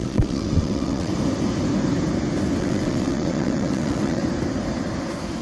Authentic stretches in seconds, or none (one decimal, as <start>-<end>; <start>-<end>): 1.1-2.6; 4.2-5.4